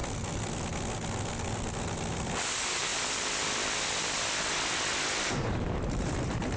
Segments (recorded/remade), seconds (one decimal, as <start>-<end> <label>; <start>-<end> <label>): 0.0-2.5 recorded; 2.5-2.9 remade; 2.9-5.2 recorded; 5.2-6.6 remade